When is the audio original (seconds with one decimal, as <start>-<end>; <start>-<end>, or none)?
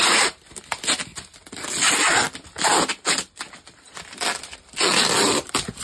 0.0-5.8